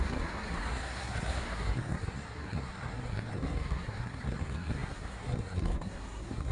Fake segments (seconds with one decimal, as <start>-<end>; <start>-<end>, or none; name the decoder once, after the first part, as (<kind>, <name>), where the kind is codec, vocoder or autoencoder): 0.0-6.5 (codec, SNAC)